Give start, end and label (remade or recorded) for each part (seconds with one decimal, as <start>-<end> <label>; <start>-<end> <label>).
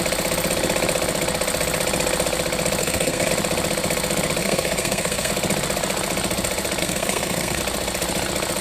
0.0-2.8 recorded; 2.8-3.3 remade; 3.3-4.4 recorded; 4.4-5.3 remade; 5.3-6.8 recorded; 6.8-7.6 remade; 7.6-8.6 recorded